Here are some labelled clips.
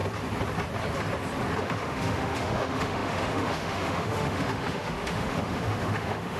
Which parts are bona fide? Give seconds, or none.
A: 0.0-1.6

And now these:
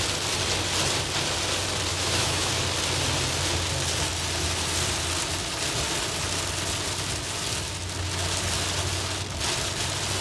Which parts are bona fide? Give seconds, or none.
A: 0.0-1.9; 2.5-10.2

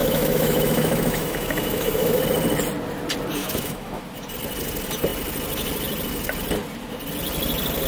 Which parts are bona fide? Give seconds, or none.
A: 2.2-3.4; 4.0-7.9

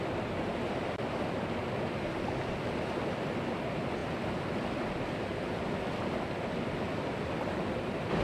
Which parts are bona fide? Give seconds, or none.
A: 0.0-8.2